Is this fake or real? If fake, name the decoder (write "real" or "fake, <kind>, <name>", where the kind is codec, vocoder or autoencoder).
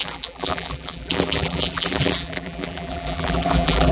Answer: fake, vocoder, BigVGAN v2